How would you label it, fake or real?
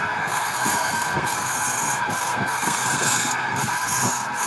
fake